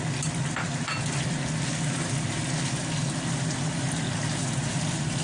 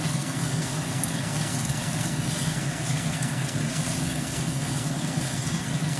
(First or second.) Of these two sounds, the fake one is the second